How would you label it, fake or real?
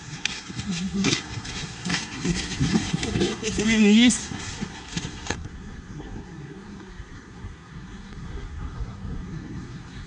fake